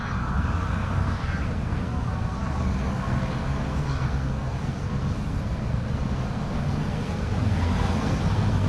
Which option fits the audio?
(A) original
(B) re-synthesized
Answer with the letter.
B